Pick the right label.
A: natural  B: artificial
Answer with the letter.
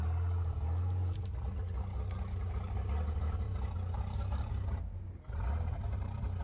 A